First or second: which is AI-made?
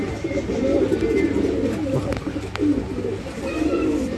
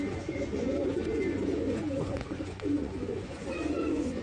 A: second